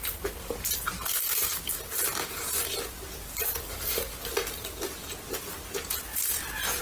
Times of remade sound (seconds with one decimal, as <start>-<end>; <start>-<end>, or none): none